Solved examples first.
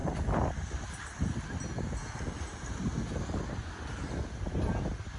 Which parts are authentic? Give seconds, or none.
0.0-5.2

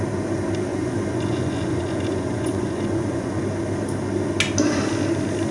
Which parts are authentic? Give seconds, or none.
0.0-0.7; 3.4-5.5

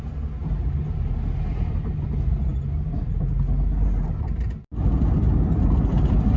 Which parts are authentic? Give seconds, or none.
0.0-6.4